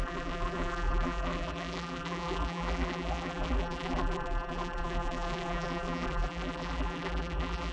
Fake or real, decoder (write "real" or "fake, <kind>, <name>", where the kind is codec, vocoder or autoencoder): fake, vocoder, BigVGAN v2